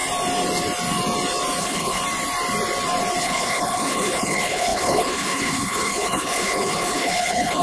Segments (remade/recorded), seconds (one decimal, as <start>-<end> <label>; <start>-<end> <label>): 0.0-1.6 recorded; 1.6-2.0 remade; 2.0-3.2 recorded; 3.2-7.6 remade